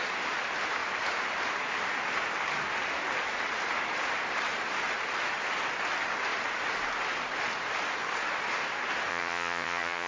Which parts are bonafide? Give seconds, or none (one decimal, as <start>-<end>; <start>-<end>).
0.0-9.1